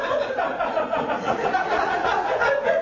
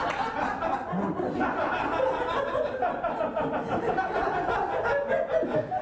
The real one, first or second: second